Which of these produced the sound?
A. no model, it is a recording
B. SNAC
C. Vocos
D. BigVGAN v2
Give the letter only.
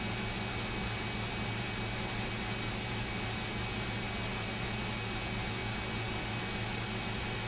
A